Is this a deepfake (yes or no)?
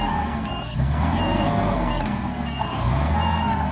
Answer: yes